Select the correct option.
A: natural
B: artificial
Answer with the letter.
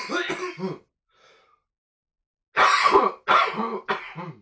A